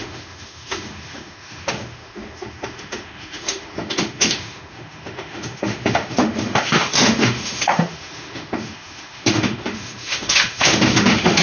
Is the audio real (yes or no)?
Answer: no